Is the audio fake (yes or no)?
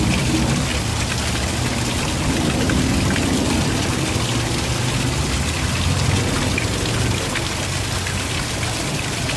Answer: no